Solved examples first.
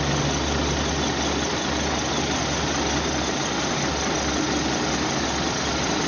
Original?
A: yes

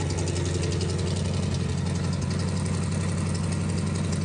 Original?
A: yes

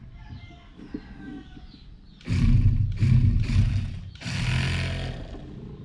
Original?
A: yes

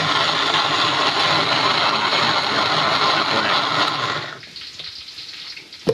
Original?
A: yes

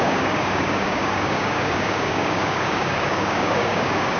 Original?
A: no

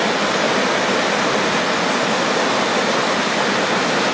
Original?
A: yes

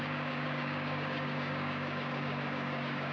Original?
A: no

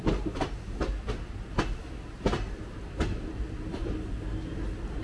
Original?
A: yes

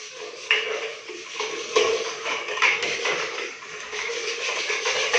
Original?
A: no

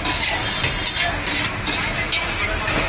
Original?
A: yes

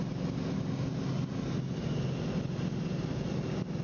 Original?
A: yes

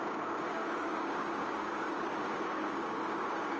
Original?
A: no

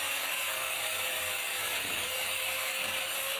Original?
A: no